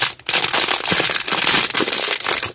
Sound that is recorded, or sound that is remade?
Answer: recorded